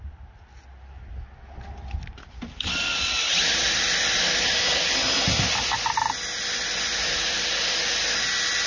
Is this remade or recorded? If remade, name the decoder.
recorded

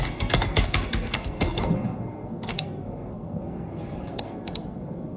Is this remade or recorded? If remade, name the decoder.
remade, codec, SNAC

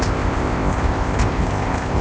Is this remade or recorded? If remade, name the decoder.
remade, codec, ZipCodec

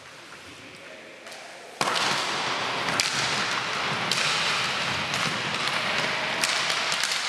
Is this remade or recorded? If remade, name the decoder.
recorded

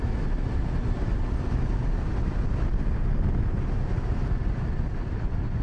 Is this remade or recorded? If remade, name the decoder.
recorded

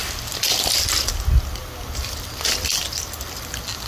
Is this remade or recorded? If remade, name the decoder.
recorded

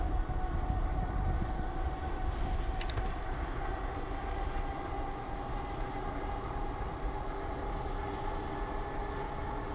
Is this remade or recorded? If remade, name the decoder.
recorded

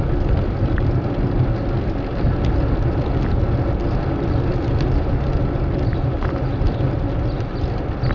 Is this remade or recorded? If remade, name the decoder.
recorded